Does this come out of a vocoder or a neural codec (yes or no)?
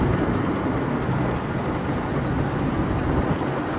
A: no